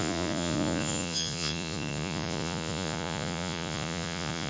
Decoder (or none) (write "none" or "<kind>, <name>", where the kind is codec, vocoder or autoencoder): vocoder, Vocos